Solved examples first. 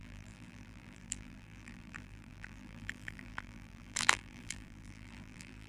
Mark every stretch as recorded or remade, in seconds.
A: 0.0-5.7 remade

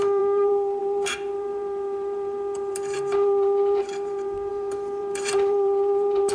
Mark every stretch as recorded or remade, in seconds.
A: 0.0-6.3 remade